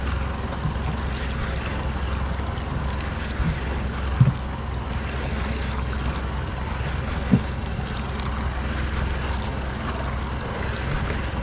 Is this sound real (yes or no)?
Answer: yes